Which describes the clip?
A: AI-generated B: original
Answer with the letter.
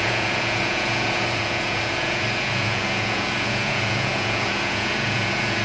A